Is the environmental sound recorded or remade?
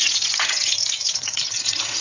remade